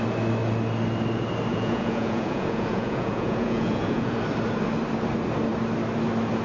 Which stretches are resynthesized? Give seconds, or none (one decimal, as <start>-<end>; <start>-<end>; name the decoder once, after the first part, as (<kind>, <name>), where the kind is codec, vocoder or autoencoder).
1.5-4.2 (vocoder, Vocos)